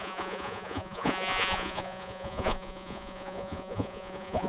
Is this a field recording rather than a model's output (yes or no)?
no